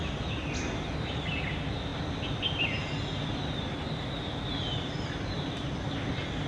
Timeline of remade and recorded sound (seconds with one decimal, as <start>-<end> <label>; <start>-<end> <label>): 0.0-6.5 recorded

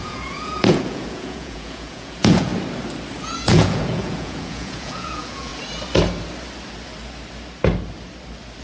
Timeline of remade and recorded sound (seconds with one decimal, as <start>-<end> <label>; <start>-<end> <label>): 0.0-2.5 remade; 2.5-3.2 recorded; 3.2-5.5 remade; 5.5-8.6 recorded

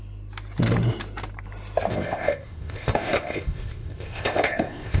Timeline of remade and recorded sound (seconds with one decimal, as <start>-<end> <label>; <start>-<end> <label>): 0.0-1.9 recorded; 1.9-5.0 remade

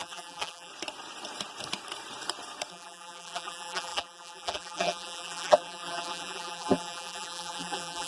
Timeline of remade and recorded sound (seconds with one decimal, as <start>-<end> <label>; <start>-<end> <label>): 0.0-0.7 remade; 0.7-2.7 recorded; 2.7-8.1 remade